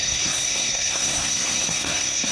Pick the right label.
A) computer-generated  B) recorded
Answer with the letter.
A